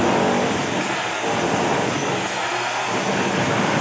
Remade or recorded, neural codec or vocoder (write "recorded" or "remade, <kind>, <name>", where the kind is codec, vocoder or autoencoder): recorded